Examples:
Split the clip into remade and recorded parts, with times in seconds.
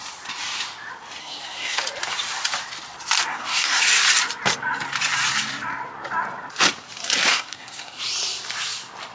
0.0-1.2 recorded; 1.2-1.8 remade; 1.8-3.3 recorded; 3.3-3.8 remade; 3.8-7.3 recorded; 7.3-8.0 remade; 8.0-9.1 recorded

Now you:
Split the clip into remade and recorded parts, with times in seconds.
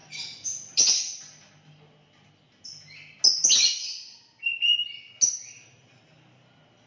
0.0-6.9 recorded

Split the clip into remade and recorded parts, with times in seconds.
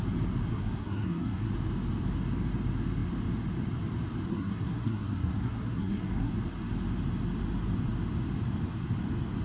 0.0-0.5 recorded; 0.5-1.5 remade; 1.5-4.3 recorded; 4.3-6.3 remade; 6.3-9.4 recorded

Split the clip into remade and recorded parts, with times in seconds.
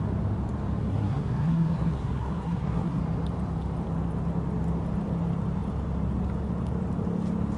0.0-0.8 recorded; 0.8-3.0 remade; 3.0-7.6 recorded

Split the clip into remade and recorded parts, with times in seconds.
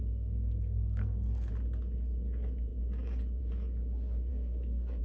0.0-1.5 remade; 1.5-4.3 recorded; 4.3-5.0 remade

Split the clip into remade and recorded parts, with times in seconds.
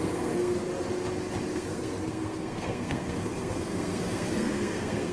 0.0-0.7 remade; 0.7-1.5 recorded; 1.5-5.1 remade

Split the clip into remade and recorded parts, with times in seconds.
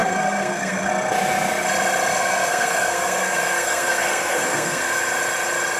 0.0-0.9 remade; 0.9-2.1 recorded; 2.1-5.0 remade; 5.0-5.8 recorded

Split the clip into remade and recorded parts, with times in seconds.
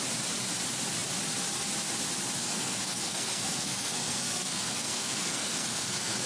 0.0-2.4 recorded; 2.4-6.3 remade